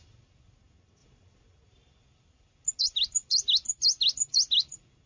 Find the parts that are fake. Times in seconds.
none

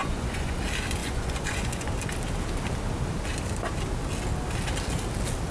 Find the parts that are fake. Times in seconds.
0.0-0.6 (vocoder, Vocos); 1.0-1.9

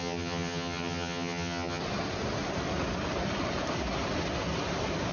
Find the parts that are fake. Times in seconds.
0.0-1.8 (vocoder, HiFi-GAN)

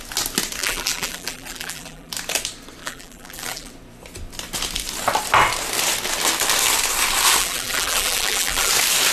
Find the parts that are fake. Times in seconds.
0.6-2.1 (vocoder, BigVGAN v2); 2.8-3.7; 7.4-8.7

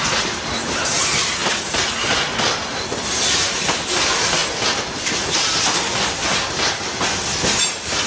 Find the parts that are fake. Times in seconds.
4.4-5.2 (vocoder, BigVGAN v2)

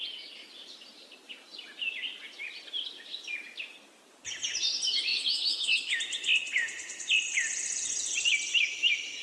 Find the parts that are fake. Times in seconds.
5.1-6.0 (autoencoder, DAC-VAE)